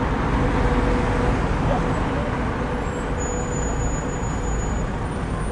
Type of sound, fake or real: real